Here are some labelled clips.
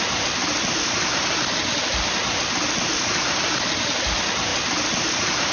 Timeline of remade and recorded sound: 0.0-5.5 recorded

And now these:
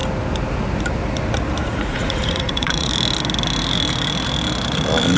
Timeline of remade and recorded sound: 0.0-1.6 recorded; 1.6-2.9 remade; 2.9-5.2 recorded

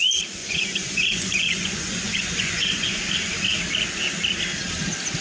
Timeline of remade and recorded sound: 0.0-0.4 recorded; 0.4-3.1 remade; 3.1-5.2 recorded

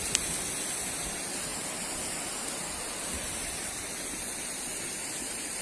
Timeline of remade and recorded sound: 0.0-5.6 recorded